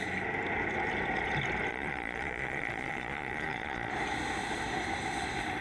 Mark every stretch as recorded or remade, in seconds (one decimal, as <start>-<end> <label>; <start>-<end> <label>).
0.0-1.7 recorded; 1.7-3.9 remade; 3.9-5.6 recorded